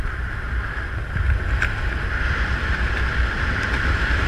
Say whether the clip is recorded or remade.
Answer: recorded